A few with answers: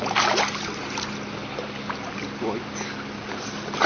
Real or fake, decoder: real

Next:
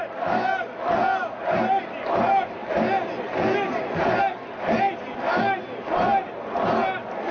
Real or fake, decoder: real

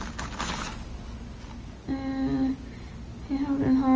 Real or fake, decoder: real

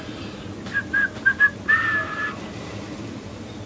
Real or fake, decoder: real